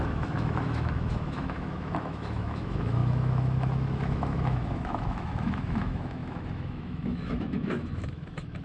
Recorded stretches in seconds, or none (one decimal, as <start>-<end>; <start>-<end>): none